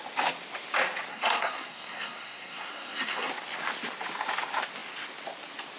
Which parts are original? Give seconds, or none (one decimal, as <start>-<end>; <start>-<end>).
0.0-1.1; 3.3-5.8